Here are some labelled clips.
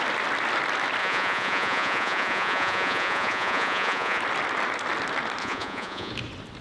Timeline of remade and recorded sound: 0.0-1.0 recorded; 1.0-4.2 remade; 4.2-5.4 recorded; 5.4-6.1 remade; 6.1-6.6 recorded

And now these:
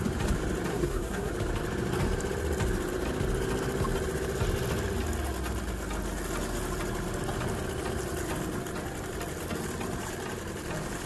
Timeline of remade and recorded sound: 0.0-0.7 recorded; 0.7-1.3 remade; 1.3-11.1 recorded

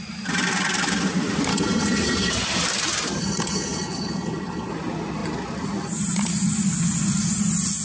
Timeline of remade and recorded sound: 0.0-1.5 recorded; 1.5-2.3 remade; 2.3-3.2 recorded; 3.2-4.7 remade; 4.7-7.8 recorded

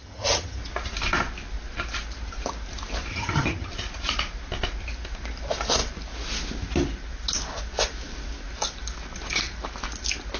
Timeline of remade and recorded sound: 0.0-0.6 remade; 0.6-3.1 recorded; 3.1-3.7 remade; 3.7-10.4 recorded

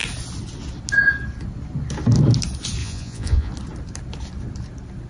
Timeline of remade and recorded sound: 0.0-2.8 recorded; 2.8-3.5 remade; 3.5-5.1 recorded